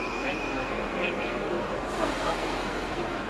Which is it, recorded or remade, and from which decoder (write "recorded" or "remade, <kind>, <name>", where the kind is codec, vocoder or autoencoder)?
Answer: remade, codec, SNAC